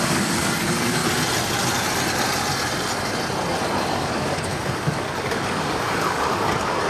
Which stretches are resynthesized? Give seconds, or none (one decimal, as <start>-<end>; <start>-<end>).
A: 0.0-1.0; 3.9-6.9